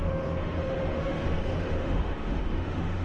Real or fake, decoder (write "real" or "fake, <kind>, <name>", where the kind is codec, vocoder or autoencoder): fake, autoencoder, DAC-VAE